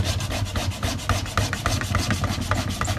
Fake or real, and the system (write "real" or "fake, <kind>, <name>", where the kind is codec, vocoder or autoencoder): real